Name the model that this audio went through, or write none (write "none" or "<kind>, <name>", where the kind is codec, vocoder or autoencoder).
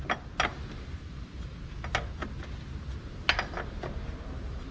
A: none